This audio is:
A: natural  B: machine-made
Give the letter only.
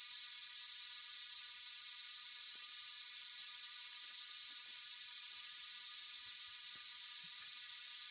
A